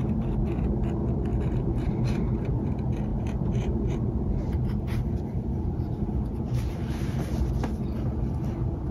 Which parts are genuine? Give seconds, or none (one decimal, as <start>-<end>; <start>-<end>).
0.0-1.3; 2.6-3.1; 7.0-8.9